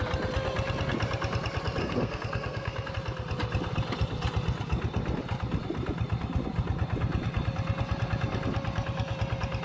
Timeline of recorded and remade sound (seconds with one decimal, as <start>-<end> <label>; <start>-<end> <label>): 0.0-1.8 recorded; 1.8-2.9 remade; 2.9-9.6 recorded